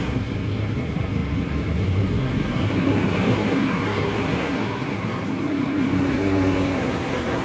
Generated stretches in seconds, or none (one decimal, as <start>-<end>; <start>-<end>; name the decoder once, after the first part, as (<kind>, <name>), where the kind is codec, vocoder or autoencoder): 0.0-7.4 (codec, SNAC)